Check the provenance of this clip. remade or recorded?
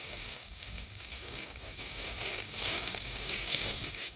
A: remade